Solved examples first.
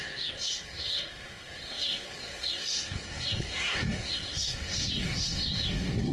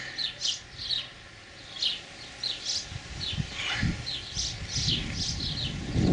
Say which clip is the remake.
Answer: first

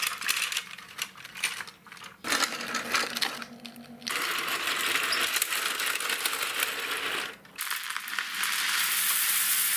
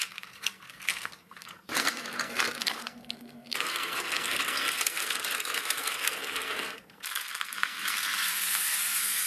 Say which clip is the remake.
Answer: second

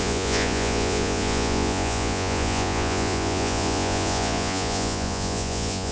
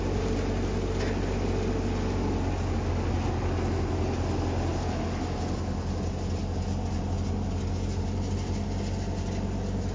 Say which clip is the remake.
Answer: first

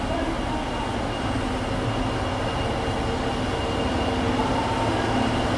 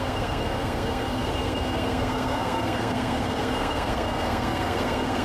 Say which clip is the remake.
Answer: second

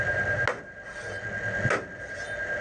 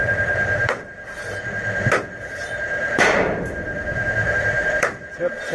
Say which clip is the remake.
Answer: second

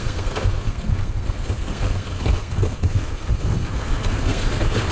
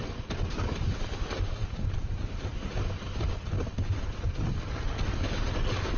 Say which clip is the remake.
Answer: first